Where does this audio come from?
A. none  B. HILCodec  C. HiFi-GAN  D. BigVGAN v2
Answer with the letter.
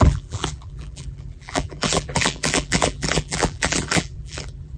D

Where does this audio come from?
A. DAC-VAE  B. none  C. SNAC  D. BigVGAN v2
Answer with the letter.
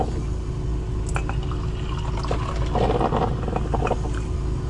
B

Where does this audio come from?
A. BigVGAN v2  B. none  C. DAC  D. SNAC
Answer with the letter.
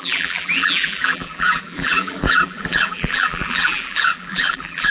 A